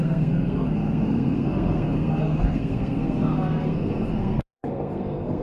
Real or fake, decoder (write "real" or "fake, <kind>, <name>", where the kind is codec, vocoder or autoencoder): fake, codec, SNAC